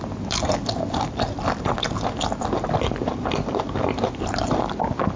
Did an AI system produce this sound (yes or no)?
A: no